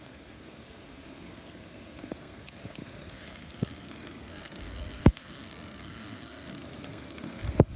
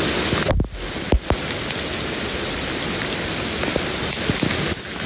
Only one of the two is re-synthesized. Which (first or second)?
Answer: first